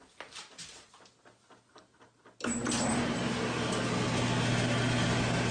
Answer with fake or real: real